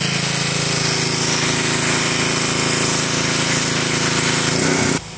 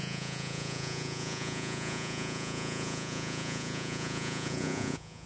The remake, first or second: second